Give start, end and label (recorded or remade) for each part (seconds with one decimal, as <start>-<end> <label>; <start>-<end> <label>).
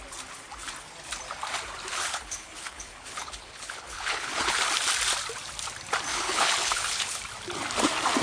0.0-1.9 recorded; 1.9-4.6 remade; 4.6-6.1 recorded; 6.1-7.2 remade; 7.2-8.2 recorded